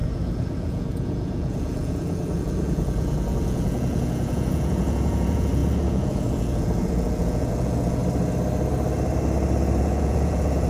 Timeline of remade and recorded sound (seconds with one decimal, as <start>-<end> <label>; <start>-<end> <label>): 0.0-8.0 remade; 8.0-9.8 recorded; 9.8-10.7 remade